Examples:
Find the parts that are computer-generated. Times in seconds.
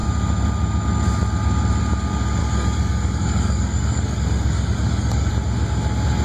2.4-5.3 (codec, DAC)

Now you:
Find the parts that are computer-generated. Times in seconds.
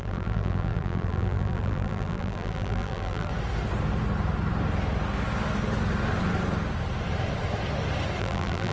0.0-3.3 (vocoder, BigVGAN v2); 8.2-8.7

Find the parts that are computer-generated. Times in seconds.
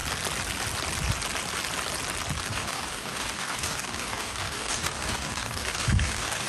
2.5-6.5 (codec, DAC)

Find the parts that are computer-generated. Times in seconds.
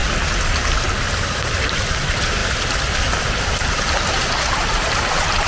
1.4-2.4 (vocoder, BigVGAN v2); 3.2-5.5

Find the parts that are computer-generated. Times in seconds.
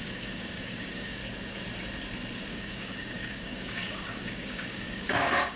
0.0-1.2 (codec, DAC); 2.5-5.6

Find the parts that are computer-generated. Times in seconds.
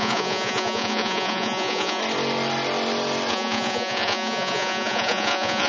0.0-2.0 (vocoder, Vocos); 3.3-5.7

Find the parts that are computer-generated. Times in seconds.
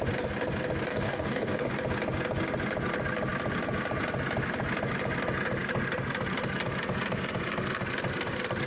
0.9-1.7 (codec, DAC)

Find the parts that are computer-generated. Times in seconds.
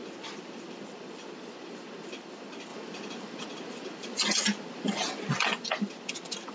none